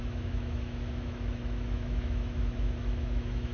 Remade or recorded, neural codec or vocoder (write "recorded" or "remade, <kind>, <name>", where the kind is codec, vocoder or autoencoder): remade, autoencoder, DAC-VAE